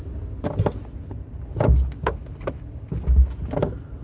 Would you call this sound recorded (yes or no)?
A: yes